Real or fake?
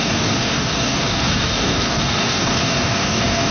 fake